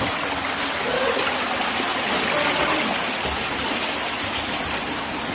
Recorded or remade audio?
recorded